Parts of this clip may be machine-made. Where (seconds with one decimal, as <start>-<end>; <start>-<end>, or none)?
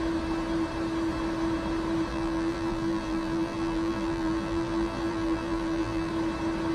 2.1-6.1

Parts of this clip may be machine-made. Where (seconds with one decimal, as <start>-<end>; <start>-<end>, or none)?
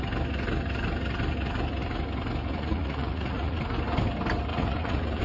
2.5-3.6; 4.5-5.2